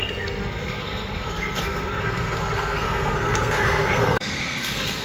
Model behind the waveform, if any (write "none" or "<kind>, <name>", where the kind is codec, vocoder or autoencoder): codec, SNAC